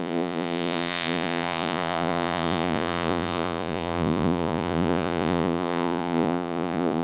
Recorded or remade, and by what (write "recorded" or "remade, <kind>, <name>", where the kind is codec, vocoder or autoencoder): remade, vocoder, Vocos